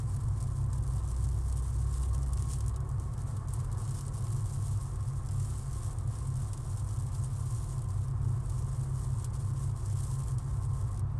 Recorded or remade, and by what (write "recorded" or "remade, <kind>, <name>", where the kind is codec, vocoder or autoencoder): recorded